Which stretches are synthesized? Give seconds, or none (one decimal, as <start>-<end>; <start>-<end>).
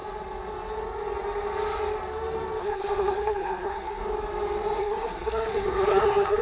2.6-4.0; 4.8-6.4